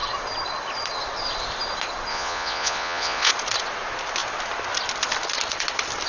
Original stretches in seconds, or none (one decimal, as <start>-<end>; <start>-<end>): 0.0-2.1; 3.3-6.1